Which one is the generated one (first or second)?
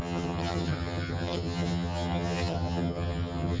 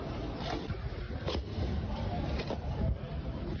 first